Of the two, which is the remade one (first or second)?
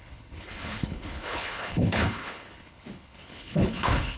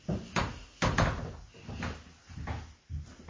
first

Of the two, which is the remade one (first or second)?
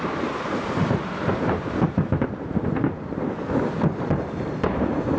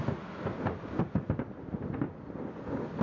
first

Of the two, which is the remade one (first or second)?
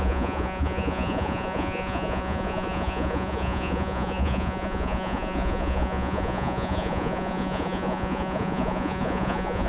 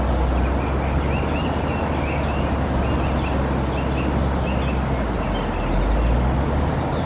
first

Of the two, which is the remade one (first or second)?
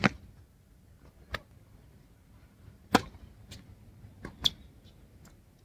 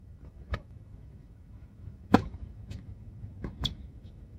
second